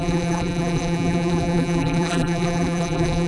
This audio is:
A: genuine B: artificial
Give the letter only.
B